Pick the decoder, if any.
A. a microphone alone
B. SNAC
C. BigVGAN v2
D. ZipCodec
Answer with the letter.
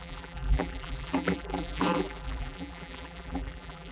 C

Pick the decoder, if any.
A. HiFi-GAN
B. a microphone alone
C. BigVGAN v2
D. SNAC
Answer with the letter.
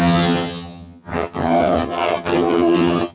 A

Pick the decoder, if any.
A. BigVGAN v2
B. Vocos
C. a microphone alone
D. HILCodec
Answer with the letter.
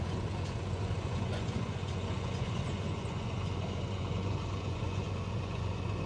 B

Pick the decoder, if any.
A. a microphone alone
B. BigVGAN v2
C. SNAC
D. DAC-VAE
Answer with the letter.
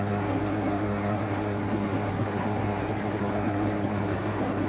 C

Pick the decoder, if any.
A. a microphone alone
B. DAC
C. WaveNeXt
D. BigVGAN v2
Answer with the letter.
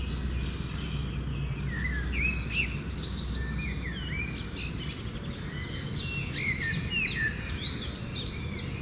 A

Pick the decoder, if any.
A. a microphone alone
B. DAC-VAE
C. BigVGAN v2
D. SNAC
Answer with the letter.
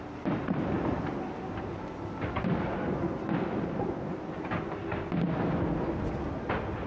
A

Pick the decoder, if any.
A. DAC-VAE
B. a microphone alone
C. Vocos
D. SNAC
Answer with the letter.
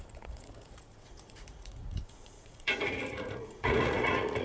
C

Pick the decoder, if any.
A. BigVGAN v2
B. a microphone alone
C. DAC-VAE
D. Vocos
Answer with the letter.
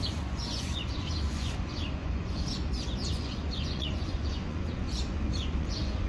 D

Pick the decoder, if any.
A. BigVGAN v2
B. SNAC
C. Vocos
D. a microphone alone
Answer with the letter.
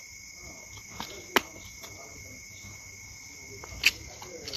D